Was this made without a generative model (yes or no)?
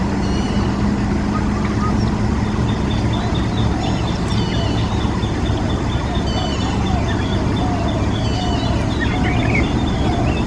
yes